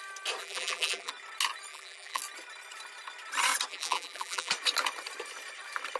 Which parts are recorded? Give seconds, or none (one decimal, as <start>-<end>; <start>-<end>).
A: 0.0-0.4; 1.1-1.7; 2.2-3.7; 4.5-6.0